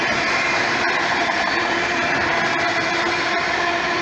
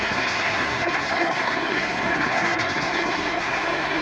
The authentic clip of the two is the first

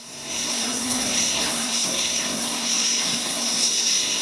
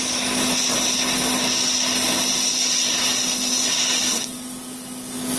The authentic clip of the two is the second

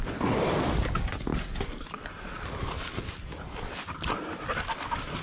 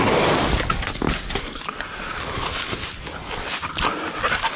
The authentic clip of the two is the second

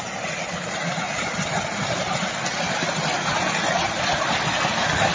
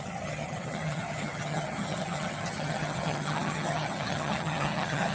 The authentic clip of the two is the first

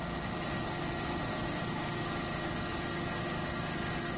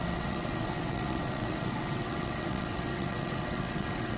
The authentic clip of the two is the first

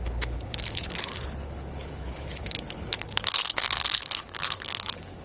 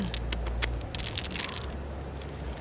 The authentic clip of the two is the second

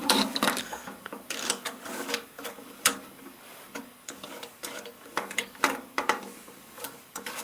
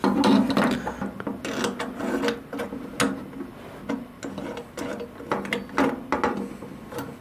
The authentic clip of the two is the second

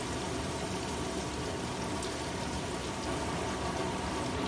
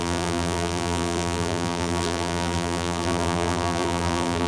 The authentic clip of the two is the first